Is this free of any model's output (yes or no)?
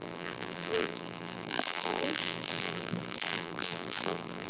no